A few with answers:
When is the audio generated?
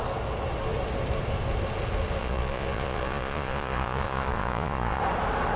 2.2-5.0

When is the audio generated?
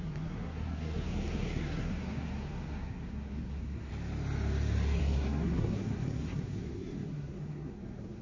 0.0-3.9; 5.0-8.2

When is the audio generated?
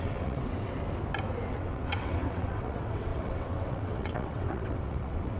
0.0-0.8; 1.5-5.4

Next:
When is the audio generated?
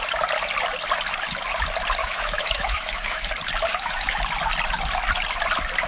2.0-3.3; 3.7-4.2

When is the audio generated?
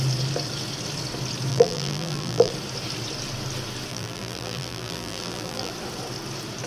1.5-2.5; 3.9-5.7